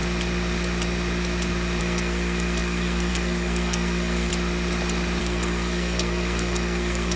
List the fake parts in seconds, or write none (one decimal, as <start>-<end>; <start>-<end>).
1.8-4.3; 5.2-7.2